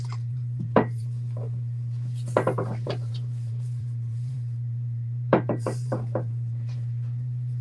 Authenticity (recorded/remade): remade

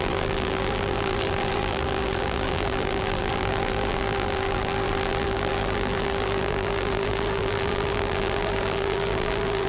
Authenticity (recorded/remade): remade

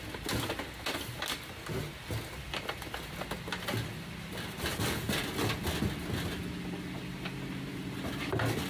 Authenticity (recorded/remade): recorded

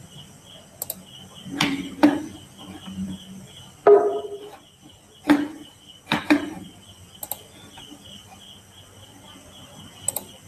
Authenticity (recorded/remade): recorded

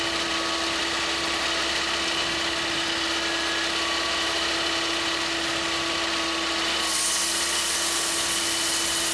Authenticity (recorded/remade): recorded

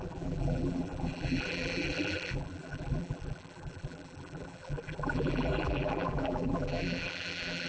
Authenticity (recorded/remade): remade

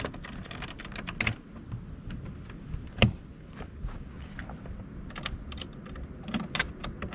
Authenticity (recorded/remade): recorded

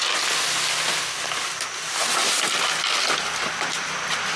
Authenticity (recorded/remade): recorded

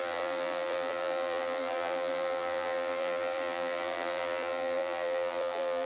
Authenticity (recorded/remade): remade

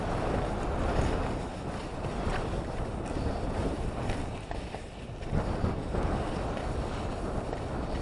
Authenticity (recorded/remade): recorded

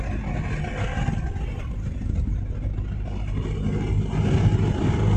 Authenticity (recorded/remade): recorded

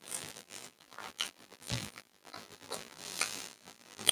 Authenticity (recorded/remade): remade